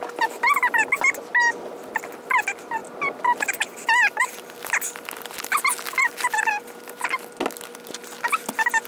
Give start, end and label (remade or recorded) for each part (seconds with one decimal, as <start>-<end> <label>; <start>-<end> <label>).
0.0-8.9 recorded

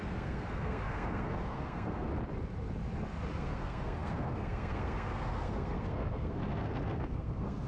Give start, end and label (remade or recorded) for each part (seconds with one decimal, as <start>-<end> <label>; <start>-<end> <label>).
0.0-2.1 remade; 2.1-3.3 recorded; 3.3-7.7 remade